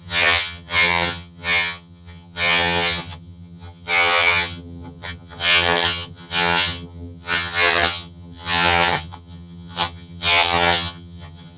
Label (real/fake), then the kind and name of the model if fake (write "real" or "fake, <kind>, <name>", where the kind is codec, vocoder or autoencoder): fake, vocoder, HiFi-GAN